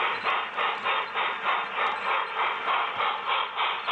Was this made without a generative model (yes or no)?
yes